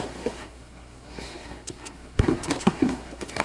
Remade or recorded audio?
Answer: remade